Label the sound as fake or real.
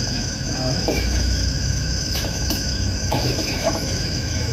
fake